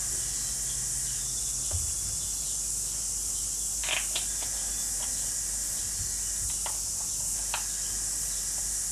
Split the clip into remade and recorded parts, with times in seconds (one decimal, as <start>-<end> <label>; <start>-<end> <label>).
0.0-8.9 recorded